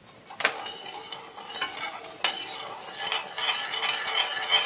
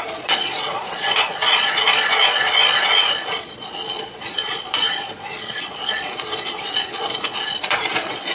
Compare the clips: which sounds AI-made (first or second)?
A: second